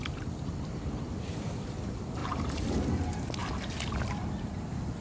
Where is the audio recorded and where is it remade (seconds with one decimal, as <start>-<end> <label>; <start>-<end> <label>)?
0.0-2.2 recorded; 2.2-2.8 remade; 2.8-5.0 recorded